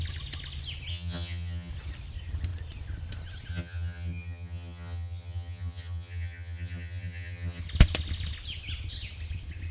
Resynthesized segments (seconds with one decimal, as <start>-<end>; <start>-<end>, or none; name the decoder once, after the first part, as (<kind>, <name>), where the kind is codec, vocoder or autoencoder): 0.9-1.7 (vocoder, HiFi-GAN); 3.5-7.6